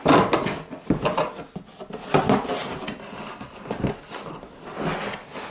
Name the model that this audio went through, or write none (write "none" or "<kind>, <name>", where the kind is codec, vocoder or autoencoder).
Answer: none